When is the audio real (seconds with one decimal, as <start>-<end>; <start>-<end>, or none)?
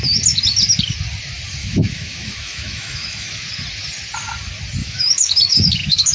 0.0-1.6; 3.5-4.8